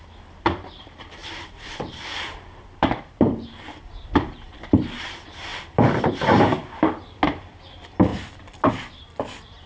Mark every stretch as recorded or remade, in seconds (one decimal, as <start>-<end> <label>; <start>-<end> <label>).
0.0-1.2 recorded; 1.2-5.0 remade; 5.0-9.7 recorded